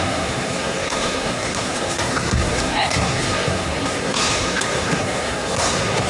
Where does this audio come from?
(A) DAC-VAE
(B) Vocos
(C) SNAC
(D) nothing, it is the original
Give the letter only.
C